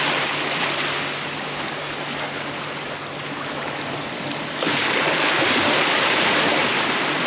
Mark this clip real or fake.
real